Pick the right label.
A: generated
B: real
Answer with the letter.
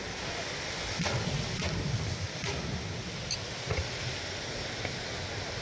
B